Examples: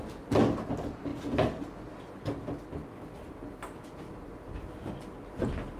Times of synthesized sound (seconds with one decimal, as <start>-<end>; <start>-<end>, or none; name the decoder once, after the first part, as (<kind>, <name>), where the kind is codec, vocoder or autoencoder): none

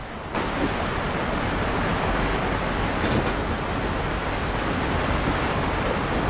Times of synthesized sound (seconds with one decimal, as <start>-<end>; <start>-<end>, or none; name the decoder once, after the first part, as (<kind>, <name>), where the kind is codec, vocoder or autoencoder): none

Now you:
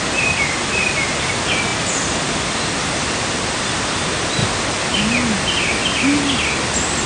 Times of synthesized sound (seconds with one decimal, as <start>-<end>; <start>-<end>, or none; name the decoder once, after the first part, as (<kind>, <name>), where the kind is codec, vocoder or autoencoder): none

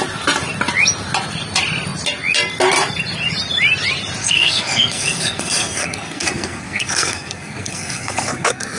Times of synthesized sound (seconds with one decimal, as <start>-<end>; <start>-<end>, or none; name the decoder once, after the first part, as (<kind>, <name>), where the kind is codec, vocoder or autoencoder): 4.2-8.8 (codec, SNAC)

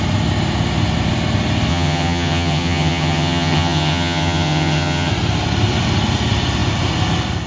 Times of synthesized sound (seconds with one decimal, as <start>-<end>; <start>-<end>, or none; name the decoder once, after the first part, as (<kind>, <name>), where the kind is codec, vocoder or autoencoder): 1.7-5.1 (vocoder, HiFi-GAN)

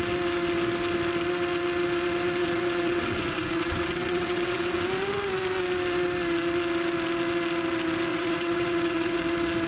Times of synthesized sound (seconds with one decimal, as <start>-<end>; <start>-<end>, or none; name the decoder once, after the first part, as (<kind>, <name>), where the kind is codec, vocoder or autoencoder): 2.4-4.8 (vocoder, WaveNeXt); 8.1-9.2